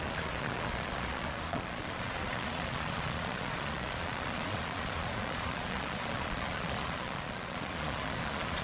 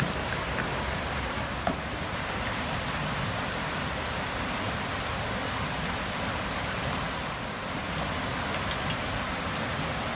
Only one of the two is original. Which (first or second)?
second